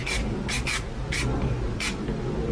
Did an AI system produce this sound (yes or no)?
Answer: no